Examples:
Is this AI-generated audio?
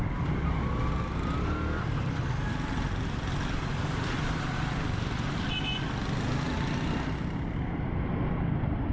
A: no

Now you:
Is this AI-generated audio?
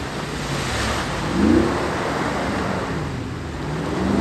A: no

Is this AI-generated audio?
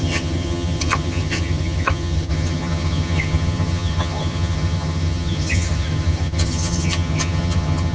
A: yes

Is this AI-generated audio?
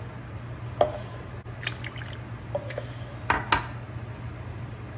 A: no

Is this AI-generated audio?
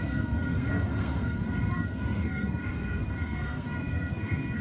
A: yes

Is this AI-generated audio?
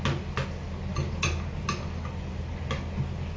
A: no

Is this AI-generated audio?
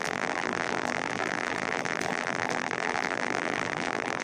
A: yes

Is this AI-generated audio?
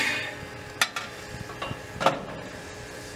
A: no